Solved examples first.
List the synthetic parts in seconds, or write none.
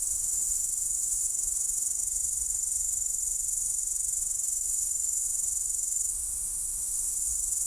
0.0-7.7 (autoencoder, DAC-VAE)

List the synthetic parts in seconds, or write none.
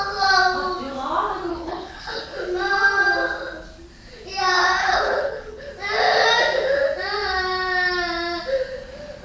1.5-2.2 (codec, HILCodec); 4.8-5.7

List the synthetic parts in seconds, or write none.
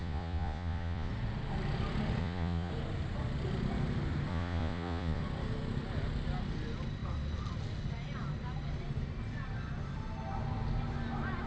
0.0-1.1 (vocoder, Vocos); 2.2-2.7; 4.3-5.2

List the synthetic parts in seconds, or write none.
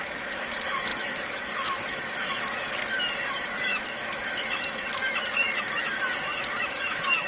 0.0-2.8 (autoencoder, DAC-VAE); 3.3-7.3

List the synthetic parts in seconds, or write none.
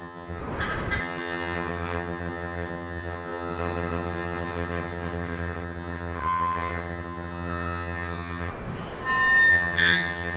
0.0-0.4 (vocoder, HiFi-GAN); 1.0-8.5; 9.5-10.4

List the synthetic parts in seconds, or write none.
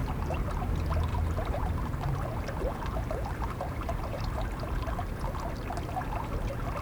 0.0-0.7 (vocoder, BigVGAN v2); 1.1-5.2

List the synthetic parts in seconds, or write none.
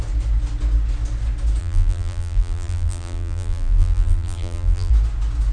1.6-4.9 (vocoder, BigVGAN v2)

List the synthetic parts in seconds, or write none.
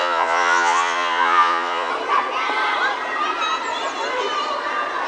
0.0-1.9 (vocoder, Vocos)